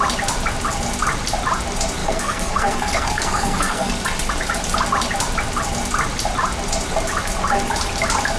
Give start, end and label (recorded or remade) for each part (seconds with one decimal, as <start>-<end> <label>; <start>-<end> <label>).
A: 0.0-2.0 recorded; 2.0-3.9 remade; 3.9-8.4 recorded